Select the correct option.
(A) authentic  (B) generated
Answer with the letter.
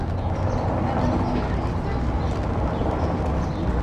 A